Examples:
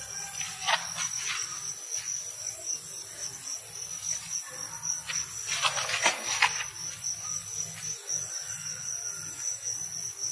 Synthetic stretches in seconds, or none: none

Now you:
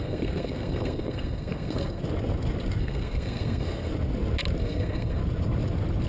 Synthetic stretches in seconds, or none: 0.0-2.0 (codec, SNAC); 2.8-3.9; 4.6-5.2

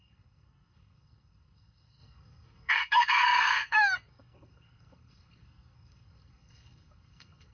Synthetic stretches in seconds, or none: 0.0-7.5 (codec, SNAC)

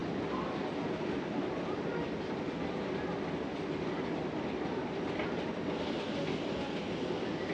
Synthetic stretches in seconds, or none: none